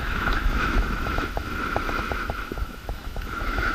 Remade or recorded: remade